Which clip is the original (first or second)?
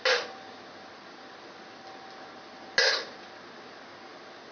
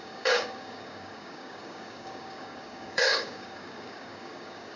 first